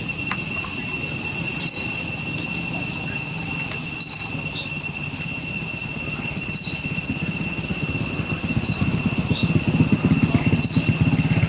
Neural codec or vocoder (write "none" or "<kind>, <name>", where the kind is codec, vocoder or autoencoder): none